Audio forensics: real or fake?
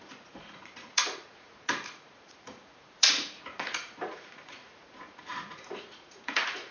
fake